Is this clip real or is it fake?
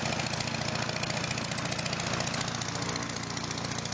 real